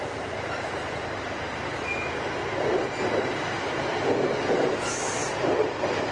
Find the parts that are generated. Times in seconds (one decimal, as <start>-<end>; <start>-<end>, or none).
0.0-2.4; 3.4-5.2